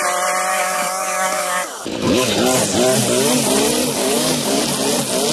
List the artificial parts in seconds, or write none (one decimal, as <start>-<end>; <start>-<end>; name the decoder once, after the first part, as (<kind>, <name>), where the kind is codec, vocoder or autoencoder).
0.5-2.3 (codec, DAC); 4.0-4.6